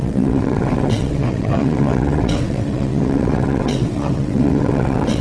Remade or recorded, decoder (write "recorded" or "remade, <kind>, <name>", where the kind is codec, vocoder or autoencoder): remade, vocoder, WaveNeXt